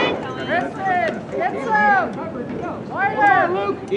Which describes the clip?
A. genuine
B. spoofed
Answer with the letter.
A